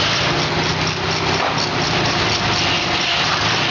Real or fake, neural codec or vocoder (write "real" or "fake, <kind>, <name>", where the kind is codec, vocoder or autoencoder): real